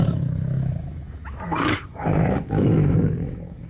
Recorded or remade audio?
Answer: remade